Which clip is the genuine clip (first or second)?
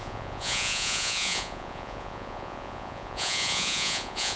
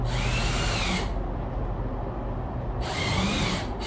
second